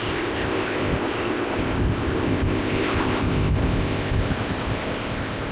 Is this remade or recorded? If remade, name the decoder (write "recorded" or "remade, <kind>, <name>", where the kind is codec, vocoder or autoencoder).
remade, codec, ZipCodec